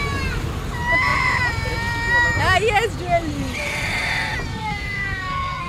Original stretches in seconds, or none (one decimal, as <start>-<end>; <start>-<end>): 0.0-4.5